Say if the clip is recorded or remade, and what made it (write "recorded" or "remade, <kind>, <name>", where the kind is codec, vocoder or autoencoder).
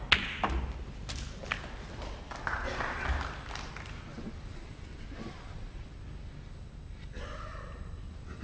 recorded